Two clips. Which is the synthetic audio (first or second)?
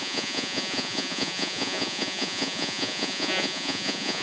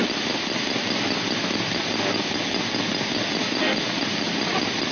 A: first